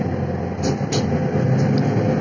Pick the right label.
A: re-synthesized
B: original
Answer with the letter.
B